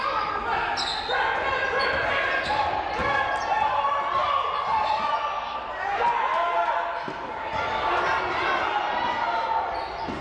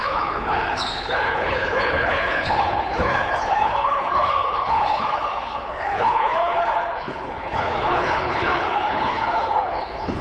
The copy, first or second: second